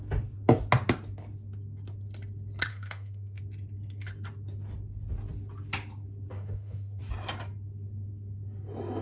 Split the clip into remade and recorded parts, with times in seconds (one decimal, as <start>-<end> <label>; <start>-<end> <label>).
0.0-2.7 recorded; 2.7-3.4 remade; 3.4-6.3 recorded; 6.3-7.0 remade; 7.0-9.0 recorded